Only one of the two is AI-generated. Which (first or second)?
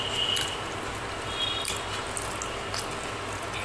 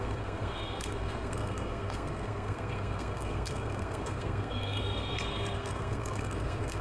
second